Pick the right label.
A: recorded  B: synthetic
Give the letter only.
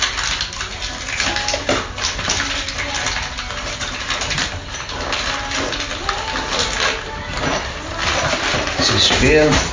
A